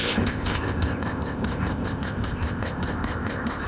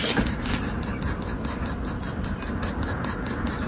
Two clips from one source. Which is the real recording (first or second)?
second